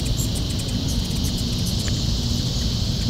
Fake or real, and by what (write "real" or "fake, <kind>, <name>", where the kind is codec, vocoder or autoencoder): real